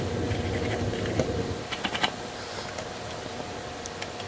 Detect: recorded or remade recorded